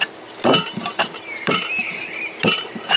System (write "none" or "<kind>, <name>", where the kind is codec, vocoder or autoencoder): vocoder, BigVGAN v2